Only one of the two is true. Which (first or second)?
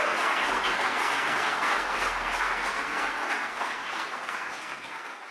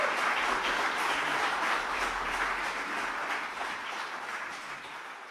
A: second